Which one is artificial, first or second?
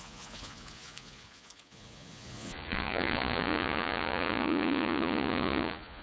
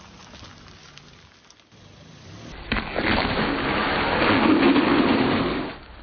first